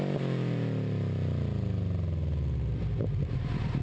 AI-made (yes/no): no